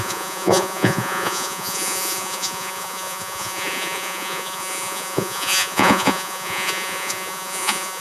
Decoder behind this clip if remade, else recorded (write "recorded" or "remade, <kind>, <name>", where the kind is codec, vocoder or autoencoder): remade, vocoder, Vocos